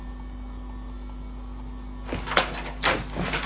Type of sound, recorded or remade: recorded